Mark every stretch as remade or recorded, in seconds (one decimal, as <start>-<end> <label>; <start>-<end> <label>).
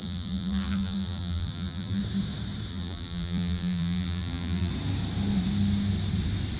0.0-2.0 remade; 2.0-2.7 recorded; 2.7-4.7 remade; 4.7-6.6 recorded